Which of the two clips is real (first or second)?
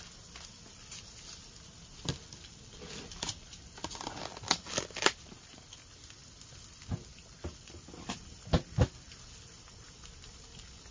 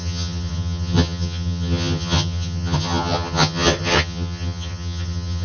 first